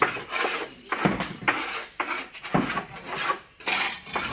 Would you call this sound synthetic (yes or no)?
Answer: no